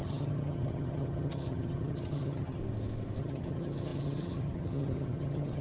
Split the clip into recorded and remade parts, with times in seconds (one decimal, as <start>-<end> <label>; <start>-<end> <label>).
0.0-2.6 remade; 2.6-3.2 recorded; 3.2-5.6 remade